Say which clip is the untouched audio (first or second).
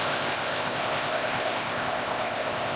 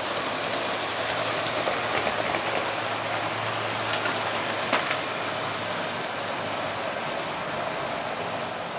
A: second